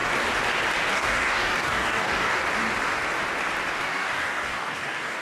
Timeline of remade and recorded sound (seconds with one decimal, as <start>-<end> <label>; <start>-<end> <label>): 0.0-0.9 recorded; 0.9-2.4 remade; 2.4-3.8 recorded; 3.8-5.2 remade